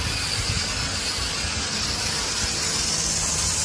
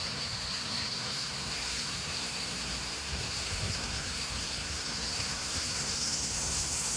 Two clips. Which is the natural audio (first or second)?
first